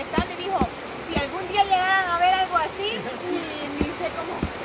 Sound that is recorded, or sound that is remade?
recorded